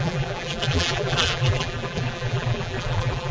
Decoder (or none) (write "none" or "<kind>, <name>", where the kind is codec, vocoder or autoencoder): vocoder, BigVGAN v2